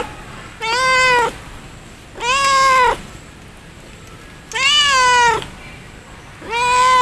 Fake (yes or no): no